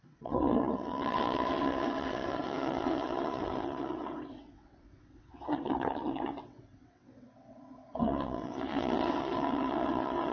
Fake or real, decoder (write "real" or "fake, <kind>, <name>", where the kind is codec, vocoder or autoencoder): fake, vocoder, WaveNeXt